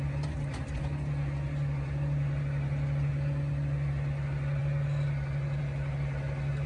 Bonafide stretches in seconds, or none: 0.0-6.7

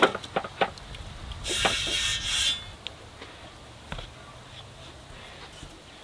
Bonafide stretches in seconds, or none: 0.0-6.0

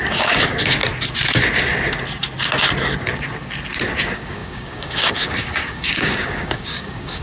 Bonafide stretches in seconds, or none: 0.8-4.0

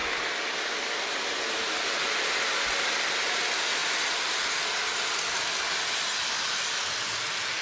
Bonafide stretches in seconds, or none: 1.5-7.6

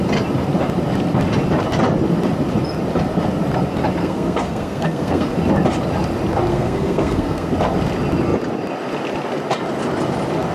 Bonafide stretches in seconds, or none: 0.0-4.0; 5.3-6.5; 7.5-10.5

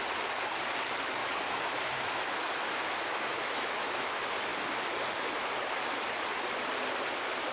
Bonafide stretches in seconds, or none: 0.0-1.2; 4.1-7.5

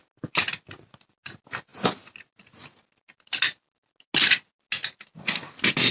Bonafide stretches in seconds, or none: 0.0-5.9

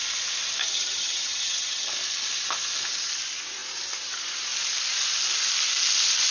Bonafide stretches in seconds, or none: 0.0-0.6; 1.9-6.3